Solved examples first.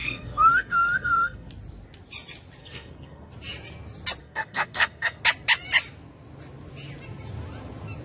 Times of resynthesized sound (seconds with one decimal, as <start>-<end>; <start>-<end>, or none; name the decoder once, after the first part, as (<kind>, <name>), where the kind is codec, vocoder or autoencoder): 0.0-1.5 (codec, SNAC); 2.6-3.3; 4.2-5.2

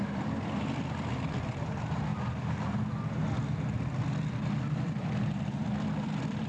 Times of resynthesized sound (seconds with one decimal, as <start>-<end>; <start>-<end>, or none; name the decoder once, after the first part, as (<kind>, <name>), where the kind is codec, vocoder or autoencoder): 0.0-2.1 (vocoder, BigVGAN v2); 4.0-6.5

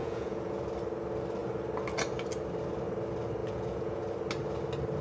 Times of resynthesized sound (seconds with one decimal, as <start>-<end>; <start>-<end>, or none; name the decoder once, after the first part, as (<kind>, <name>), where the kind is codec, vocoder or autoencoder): 0.0-0.5 (vocoder, Vocos); 3.4-4.0